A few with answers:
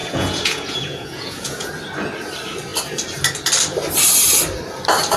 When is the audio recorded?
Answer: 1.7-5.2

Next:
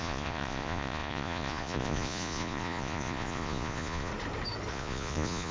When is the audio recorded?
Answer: 4.1-4.7

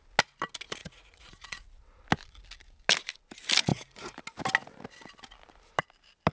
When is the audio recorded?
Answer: 0.0-0.8; 1.6-3.7; 4.2-6.3

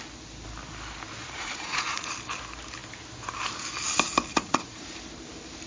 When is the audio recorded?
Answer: 0.0-1.2; 2.1-4.3; 4.9-5.7

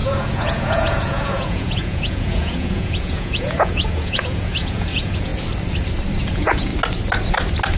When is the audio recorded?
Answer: 5.3-6.3; 6.7-7.8